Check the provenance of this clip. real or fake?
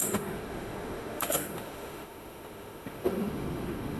fake